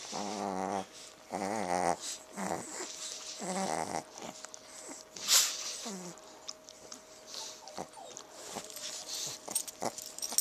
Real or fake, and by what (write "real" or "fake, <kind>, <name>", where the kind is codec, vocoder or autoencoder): real